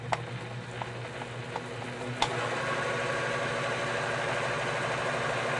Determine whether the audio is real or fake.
real